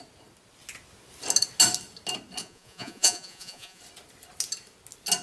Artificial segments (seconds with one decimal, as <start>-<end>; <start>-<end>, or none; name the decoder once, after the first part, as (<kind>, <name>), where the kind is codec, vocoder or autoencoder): 2.4-3.8 (vocoder, Vocos)